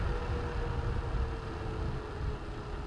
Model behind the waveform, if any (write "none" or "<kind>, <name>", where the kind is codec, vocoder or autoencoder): none